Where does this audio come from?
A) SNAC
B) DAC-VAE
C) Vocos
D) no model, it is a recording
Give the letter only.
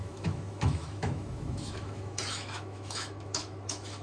B